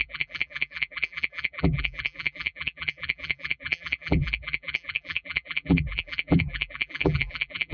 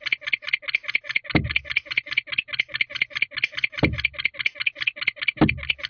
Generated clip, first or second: first